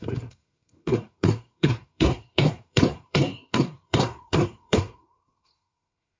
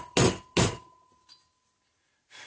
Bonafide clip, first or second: second